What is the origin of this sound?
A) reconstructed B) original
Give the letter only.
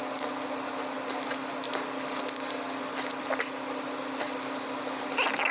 B